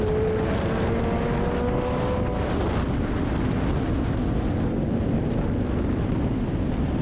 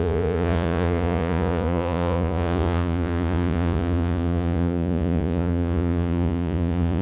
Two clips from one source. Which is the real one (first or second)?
first